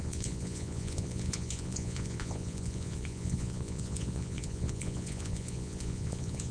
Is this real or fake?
fake